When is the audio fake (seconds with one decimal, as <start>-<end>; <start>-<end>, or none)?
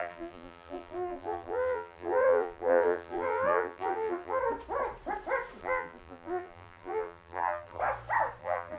0.0-4.4; 5.6-7.8; 8.4-8.8